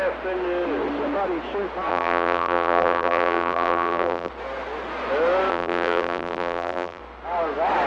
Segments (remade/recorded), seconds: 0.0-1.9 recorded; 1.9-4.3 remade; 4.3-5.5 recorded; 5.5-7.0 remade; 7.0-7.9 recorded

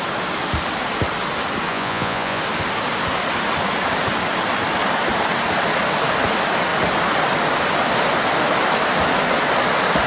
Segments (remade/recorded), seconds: 0.0-1.7 recorded; 1.7-2.4 remade; 2.4-10.1 recorded